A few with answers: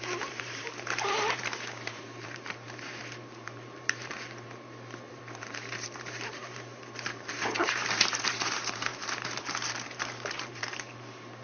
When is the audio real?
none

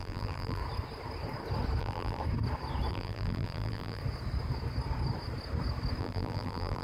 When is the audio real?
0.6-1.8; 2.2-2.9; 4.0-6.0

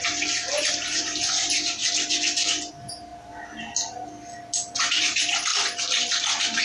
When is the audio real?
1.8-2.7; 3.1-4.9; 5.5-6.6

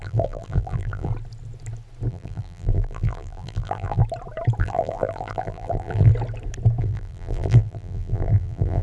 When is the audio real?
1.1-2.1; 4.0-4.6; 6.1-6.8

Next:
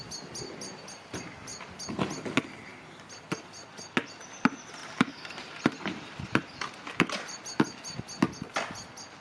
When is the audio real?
0.0-4.8; 7.4-9.2

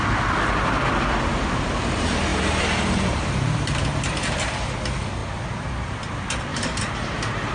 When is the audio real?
0.0-2.3; 4.4-6.5

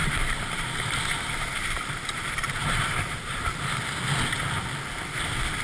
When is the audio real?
3.4-5.6